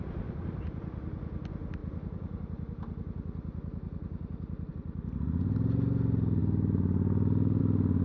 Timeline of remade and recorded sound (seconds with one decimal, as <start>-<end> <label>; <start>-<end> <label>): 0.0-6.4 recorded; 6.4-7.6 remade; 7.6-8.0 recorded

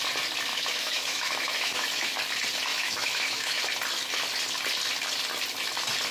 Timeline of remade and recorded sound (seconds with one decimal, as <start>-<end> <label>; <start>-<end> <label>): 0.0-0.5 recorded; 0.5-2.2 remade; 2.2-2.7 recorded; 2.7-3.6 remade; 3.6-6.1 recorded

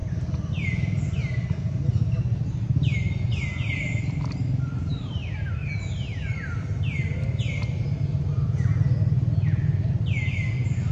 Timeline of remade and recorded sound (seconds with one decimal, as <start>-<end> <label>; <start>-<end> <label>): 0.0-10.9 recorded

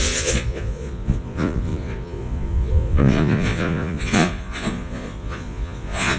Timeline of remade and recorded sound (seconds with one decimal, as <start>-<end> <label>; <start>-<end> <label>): 0.0-6.2 remade